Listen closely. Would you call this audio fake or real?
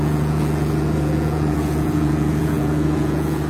fake